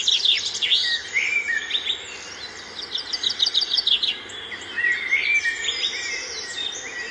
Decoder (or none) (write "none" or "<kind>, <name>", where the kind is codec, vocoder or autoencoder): vocoder, BigVGAN v2